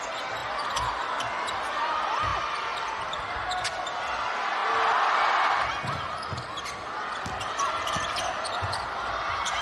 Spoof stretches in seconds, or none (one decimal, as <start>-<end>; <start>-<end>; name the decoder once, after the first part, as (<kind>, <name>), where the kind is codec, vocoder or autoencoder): none